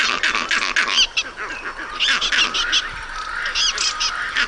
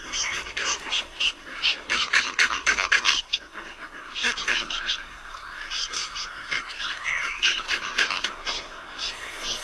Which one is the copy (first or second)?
second